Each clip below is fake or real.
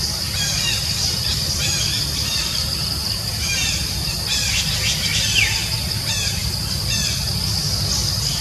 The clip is real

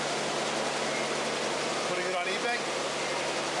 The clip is real